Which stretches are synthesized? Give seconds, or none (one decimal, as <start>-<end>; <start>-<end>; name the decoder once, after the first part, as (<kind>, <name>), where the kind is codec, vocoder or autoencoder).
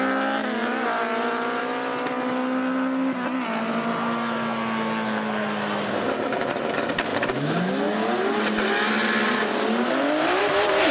none